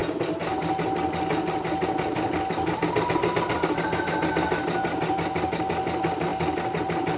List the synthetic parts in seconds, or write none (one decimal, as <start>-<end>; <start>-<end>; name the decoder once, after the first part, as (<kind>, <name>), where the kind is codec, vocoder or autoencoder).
none